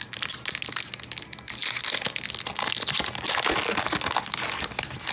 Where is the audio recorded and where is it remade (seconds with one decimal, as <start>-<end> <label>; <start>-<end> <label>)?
0.0-5.1 recorded